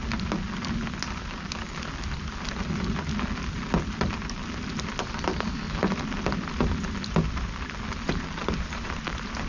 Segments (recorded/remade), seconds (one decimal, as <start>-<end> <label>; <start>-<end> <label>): 0.0-8.4 recorded; 8.4-9.5 remade